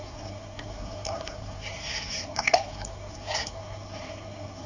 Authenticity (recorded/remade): remade